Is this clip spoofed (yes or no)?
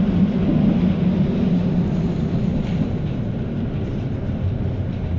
no